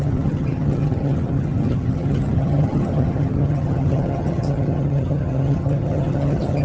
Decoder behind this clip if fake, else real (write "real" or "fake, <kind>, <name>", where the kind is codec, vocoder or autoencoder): fake, vocoder, HiFi-GAN